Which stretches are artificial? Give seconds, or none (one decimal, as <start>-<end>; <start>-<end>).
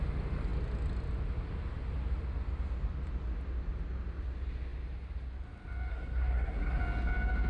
5.9-6.8